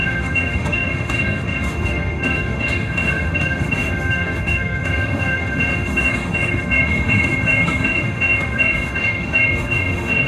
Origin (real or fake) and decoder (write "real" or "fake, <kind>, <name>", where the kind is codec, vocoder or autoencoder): fake, autoencoder, DAC-VAE